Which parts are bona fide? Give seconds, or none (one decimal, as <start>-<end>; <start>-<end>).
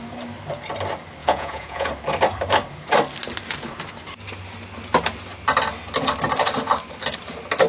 0.0-1.2; 1.9-7.7